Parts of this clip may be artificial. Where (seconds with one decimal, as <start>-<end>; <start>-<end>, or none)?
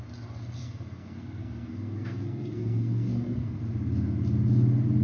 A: 0.6-3.6